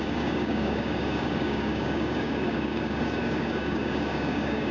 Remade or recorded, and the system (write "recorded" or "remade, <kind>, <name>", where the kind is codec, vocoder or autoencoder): remade, codec, DAC